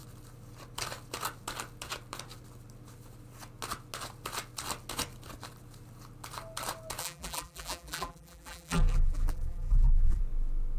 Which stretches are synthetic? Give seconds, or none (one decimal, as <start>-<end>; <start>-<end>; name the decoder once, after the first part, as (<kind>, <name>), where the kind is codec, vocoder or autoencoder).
7.0-10.2 (vocoder, BigVGAN v2)